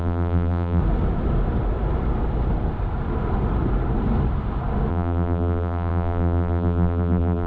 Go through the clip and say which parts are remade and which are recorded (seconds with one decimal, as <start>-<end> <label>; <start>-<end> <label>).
0.0-0.8 remade; 0.8-4.9 recorded; 4.9-7.5 remade